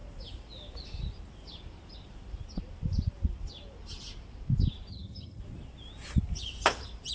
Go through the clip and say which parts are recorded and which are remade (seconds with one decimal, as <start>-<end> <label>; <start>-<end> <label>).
0.0-4.9 recorded; 4.9-5.4 remade; 5.4-7.1 recorded